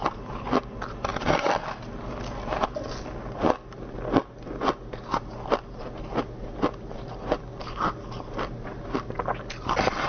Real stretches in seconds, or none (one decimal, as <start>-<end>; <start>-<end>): 0.0-10.1